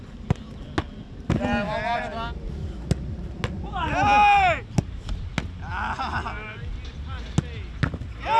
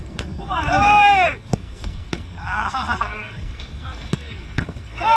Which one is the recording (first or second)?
first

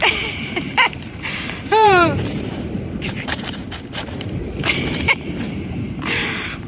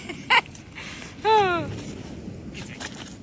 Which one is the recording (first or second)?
second